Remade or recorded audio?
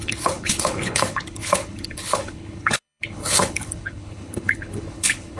remade